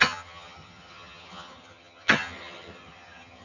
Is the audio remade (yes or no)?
yes